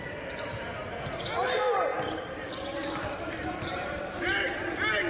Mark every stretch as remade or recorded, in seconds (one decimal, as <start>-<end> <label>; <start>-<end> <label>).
0.0-5.1 remade